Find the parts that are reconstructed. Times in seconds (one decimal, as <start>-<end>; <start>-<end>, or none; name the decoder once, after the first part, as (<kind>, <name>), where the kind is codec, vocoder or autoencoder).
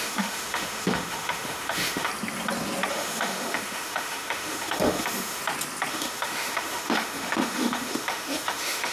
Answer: 0.0-2.1 (autoencoder, DAC-VAE); 2.9-5.4; 5.9-8.9